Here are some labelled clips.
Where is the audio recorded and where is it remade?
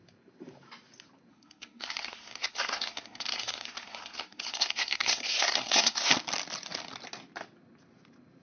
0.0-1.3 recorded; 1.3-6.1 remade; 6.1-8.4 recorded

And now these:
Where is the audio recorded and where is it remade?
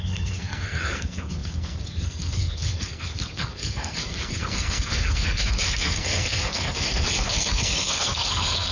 0.0-8.7 remade